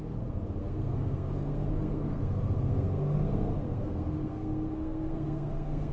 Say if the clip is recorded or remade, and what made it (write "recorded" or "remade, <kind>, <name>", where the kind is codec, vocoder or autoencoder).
remade, codec, SNAC